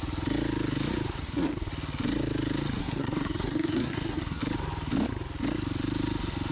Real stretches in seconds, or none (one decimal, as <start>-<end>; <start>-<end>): 0.0-1.2; 1.7-2.8; 4.4-6.5